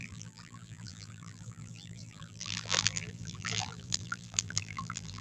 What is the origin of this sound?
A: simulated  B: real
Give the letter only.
A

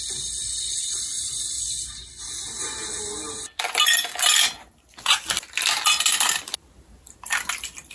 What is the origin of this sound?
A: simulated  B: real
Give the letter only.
B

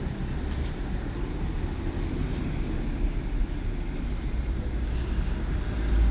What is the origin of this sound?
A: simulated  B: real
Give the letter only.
B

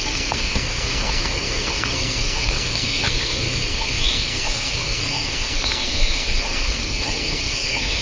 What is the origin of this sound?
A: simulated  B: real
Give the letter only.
A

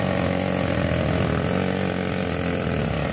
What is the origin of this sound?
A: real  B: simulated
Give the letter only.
A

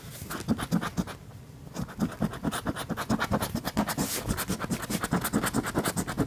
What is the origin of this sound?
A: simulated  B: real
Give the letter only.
B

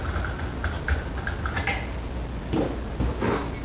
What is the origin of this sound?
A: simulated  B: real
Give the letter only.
B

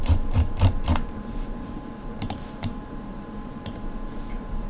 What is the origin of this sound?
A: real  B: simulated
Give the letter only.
B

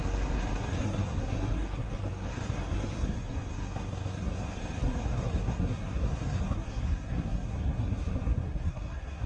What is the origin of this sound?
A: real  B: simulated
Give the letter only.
B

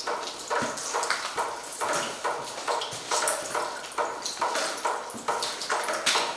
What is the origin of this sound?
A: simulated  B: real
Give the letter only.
B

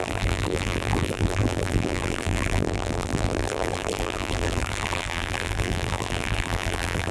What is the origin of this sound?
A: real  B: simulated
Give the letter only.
B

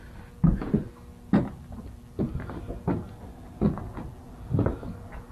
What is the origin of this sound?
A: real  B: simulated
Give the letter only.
A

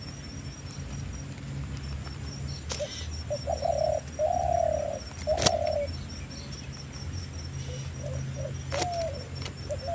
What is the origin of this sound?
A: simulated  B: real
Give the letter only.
B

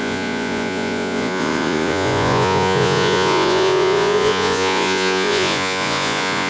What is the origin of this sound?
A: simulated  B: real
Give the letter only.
A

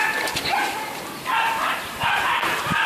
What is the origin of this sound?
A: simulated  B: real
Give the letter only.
B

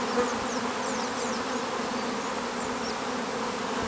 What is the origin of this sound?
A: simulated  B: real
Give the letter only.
B